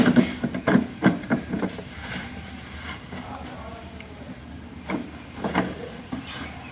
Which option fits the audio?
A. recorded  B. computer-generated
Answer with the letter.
B